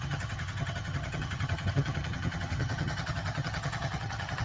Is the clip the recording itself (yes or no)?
no